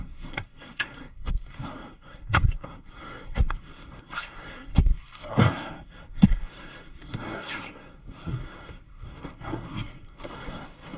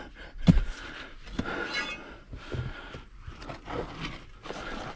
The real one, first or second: second